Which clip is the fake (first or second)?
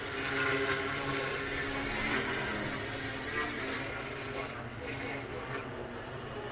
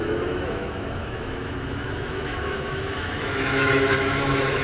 second